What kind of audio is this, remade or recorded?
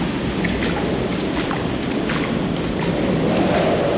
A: recorded